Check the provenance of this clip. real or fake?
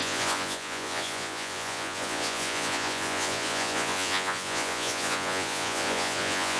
fake